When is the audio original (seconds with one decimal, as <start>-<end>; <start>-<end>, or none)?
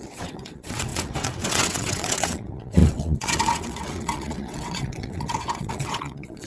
none